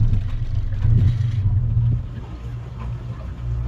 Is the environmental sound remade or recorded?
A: recorded